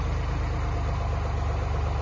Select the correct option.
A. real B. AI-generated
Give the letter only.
A